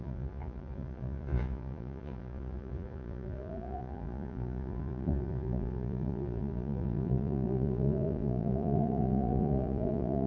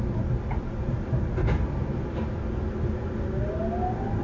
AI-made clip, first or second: first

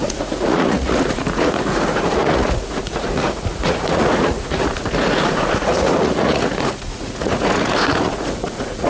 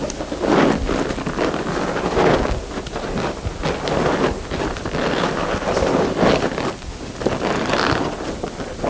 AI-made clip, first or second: first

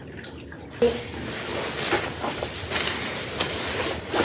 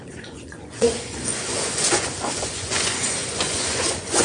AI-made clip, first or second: second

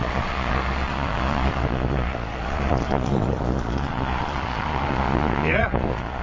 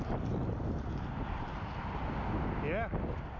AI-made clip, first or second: first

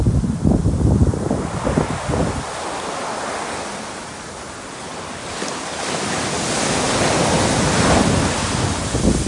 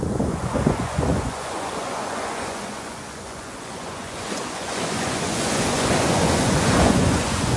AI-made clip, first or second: second